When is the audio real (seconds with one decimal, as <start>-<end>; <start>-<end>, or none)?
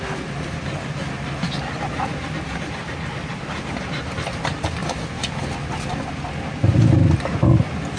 0.0-8.0